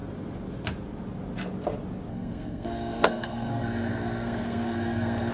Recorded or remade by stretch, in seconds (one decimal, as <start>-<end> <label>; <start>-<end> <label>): 0.0-2.1 recorded; 2.1-5.3 remade